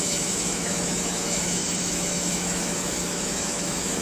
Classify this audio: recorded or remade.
remade